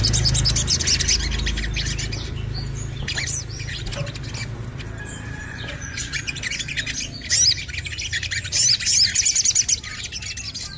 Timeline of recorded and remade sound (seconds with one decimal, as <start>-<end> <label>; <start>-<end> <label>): 0.0-5.4 recorded; 5.4-6.1 remade; 6.1-10.8 recorded